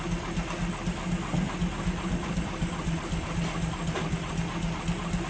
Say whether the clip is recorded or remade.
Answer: recorded